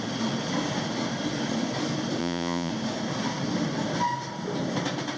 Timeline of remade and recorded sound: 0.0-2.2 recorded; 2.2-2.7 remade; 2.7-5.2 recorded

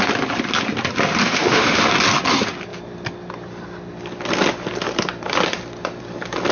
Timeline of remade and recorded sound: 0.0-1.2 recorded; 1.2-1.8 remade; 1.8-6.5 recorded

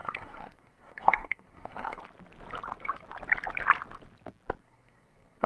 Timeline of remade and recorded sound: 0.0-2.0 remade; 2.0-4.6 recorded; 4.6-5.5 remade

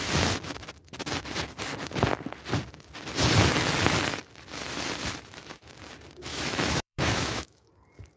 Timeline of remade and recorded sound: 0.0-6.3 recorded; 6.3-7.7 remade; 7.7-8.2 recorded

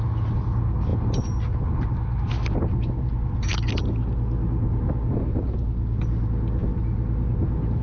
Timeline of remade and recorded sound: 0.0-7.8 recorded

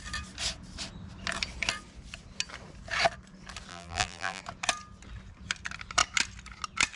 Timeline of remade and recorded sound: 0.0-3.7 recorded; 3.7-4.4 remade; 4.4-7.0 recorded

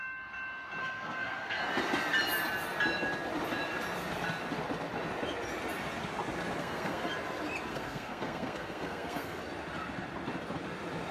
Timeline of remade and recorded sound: 0.0-0.8 recorded; 0.8-1.6 remade; 1.6-6.6 recorded; 6.6-7.1 remade; 7.1-7.7 recorded; 7.7-9.4 remade; 9.4-11.1 recorded

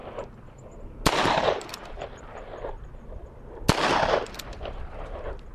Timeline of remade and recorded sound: 0.0-1.1 recorded; 1.1-2.5 remade; 2.5-4.5 recorded; 4.5-5.5 remade